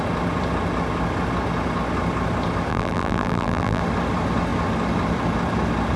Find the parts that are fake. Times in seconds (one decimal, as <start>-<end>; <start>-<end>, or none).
2.7-3.8